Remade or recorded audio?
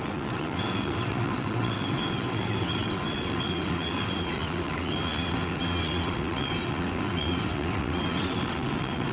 remade